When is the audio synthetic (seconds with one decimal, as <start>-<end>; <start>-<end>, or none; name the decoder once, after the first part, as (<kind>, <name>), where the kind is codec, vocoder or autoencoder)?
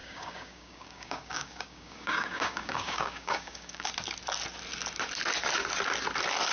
0.0-3.9 (codec, DAC)